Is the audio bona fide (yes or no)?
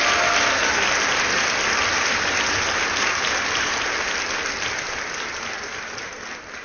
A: yes